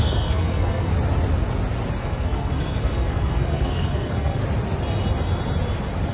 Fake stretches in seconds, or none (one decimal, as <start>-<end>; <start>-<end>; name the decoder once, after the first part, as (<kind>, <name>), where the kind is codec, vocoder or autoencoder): 0.0-0.9 (codec, SNAC); 2.0-4.4